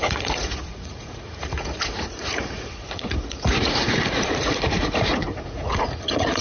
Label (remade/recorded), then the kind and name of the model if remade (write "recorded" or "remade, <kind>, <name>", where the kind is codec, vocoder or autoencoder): remade, vocoder, Vocos